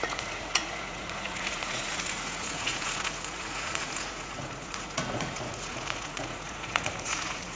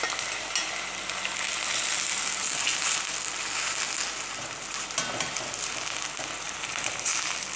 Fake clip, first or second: first